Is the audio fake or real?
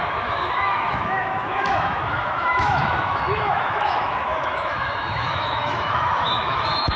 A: fake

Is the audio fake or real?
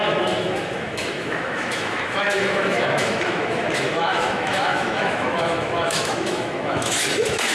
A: fake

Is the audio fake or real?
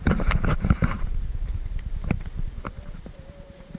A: fake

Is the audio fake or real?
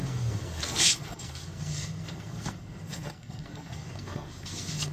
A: fake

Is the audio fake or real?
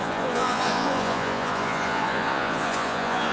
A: fake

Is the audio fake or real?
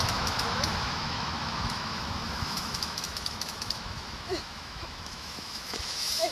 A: fake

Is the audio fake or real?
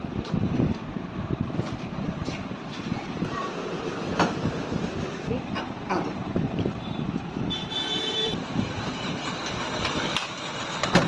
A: fake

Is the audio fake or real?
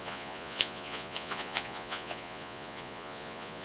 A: fake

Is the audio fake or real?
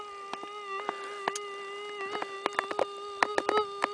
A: real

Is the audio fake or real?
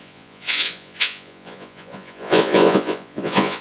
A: fake